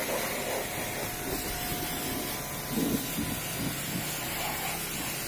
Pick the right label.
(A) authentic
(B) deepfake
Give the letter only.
A